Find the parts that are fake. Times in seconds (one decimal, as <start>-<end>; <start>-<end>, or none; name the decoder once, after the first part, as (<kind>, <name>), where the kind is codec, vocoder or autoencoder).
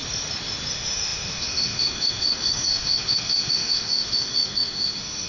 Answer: 0.7-5.3 (autoencoder, DAC-VAE)